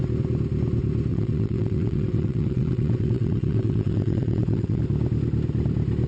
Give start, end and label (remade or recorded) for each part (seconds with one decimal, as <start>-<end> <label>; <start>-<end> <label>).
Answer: 0.0-1.1 recorded; 1.1-4.8 remade; 4.8-6.1 recorded